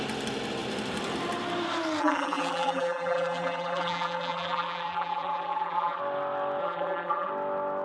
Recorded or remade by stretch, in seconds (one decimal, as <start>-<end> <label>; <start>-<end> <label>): 0.0-2.0 recorded; 2.0-6.0 remade; 6.0-6.6 recorded; 6.6-7.3 remade; 7.3-7.8 recorded